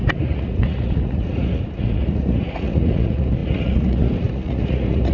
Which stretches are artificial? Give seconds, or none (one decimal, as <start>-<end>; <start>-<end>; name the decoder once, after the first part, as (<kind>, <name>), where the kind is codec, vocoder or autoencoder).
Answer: 0.0-5.1 (vocoder, Vocos)

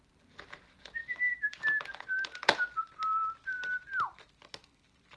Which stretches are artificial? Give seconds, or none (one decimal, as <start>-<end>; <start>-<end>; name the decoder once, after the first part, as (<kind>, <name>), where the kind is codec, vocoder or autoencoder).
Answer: none